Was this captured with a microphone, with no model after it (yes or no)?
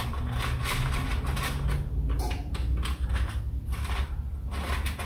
yes